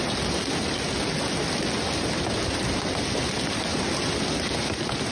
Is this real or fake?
real